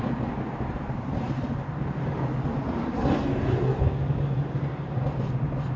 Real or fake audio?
real